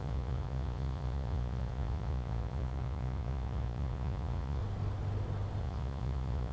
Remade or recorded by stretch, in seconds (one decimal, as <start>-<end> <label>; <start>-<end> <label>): 0.0-4.6 remade; 4.6-5.6 recorded; 5.6-6.5 remade